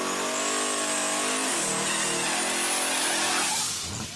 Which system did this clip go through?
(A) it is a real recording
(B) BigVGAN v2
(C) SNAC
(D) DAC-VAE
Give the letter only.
A